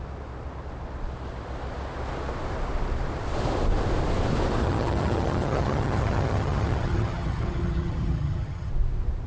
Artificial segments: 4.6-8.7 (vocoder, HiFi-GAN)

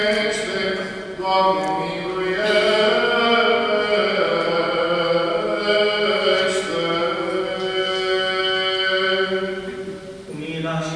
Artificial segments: 0.0-1.2 (vocoder, Vocos); 4.0-4.7; 7.0-8.4

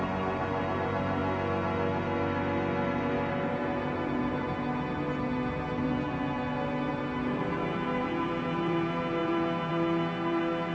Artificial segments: 0.0-1.2 (vocoder, BigVGAN v2); 3.3-6.2; 6.9-10.7

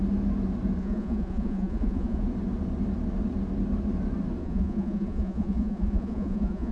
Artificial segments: 0.8-2.2 (vocoder, Vocos); 4.4-6.7